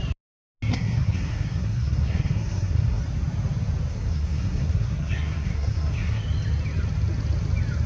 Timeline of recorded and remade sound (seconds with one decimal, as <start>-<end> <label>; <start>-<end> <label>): 0.0-0.7 recorded; 0.7-3.0 remade; 3.0-3.9 recorded; 3.9-6.2 remade; 6.2-7.9 recorded